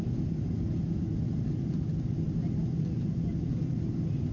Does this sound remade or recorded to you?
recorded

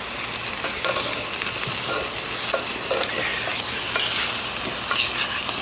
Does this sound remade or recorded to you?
recorded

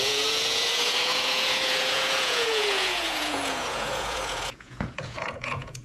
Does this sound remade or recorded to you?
remade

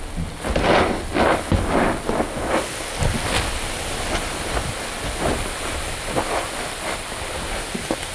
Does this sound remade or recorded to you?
recorded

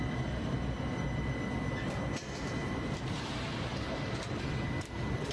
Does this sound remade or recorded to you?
recorded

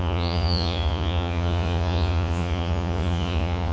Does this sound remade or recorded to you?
remade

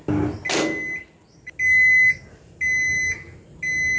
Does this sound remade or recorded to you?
recorded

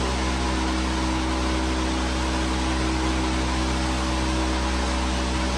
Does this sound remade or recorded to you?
recorded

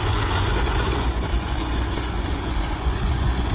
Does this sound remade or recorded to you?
remade